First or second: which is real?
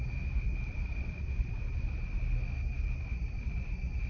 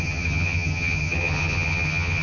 first